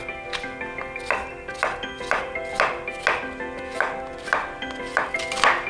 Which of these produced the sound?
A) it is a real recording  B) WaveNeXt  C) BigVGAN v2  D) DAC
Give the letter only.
A